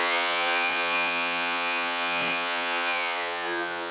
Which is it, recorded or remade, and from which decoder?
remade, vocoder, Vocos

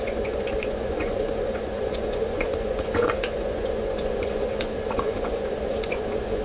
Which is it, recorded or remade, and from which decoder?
remade, vocoder, Vocos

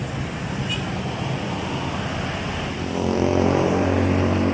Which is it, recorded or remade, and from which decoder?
recorded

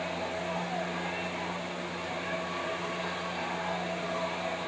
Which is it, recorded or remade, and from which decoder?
recorded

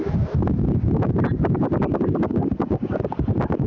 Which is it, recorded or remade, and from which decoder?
recorded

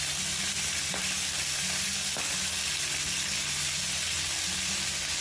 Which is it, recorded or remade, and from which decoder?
recorded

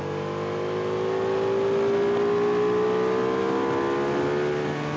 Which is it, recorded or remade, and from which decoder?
recorded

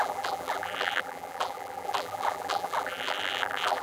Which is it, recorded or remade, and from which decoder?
remade, vocoder, BigVGAN v2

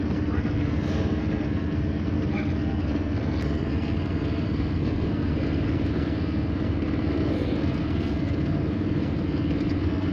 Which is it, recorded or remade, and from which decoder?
remade, codec, SNAC